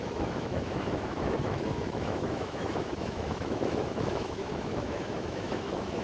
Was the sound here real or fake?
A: fake